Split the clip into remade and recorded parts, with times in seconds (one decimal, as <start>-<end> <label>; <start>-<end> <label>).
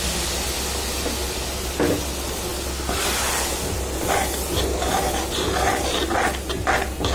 0.0-7.1 recorded